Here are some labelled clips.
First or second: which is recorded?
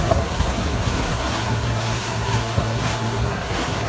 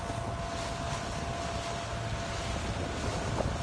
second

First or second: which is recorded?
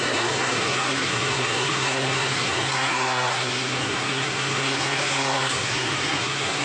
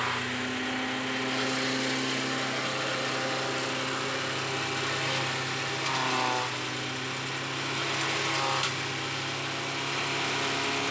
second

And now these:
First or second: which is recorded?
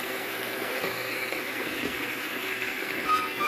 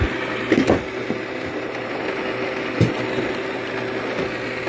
second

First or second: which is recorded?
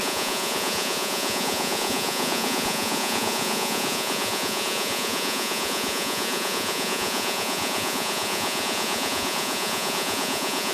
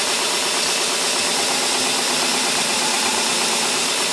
second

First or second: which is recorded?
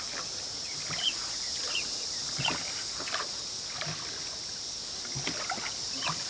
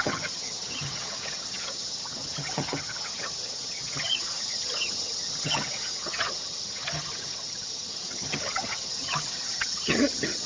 first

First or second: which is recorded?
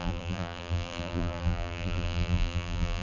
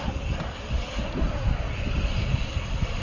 second